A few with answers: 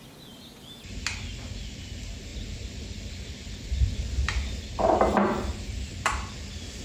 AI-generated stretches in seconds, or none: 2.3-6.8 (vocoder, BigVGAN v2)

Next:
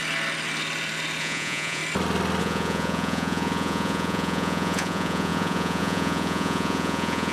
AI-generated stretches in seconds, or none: 1.2-1.8 (vocoder, Vocos); 2.4-7.3

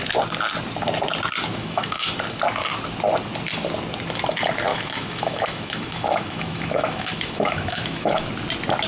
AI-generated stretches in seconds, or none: 1.5-2.1 (autoencoder, DAC-VAE); 4.7-8.3

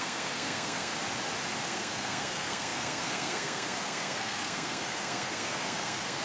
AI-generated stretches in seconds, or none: 0.0-0.9 (codec, SNAC); 1.6-6.2

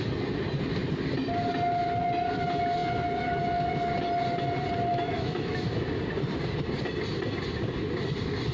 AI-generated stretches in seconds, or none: 4.9-5.9 (autoencoder, DAC-VAE)

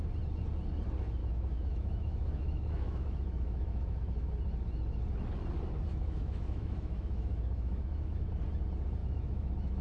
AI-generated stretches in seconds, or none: 1.2-4.3 (autoencoder, DAC-VAE); 5.9-8.3; 9.0-9.8

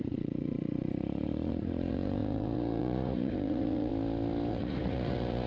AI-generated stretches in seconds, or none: 0.0-3.9 (vocoder, Vocos); 4.5-5.5